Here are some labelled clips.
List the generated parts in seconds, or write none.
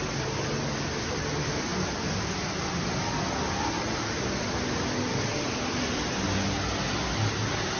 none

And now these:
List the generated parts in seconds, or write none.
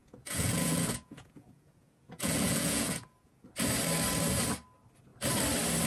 0.0-3.5 (vocoder, Vocos)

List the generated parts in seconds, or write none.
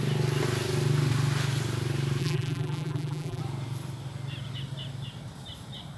2.2-3.4 (vocoder, BigVGAN v2)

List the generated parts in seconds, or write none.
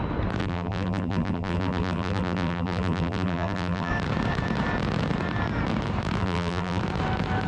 0.4-3.9 (vocoder, BigVGAN v2); 6.2-6.8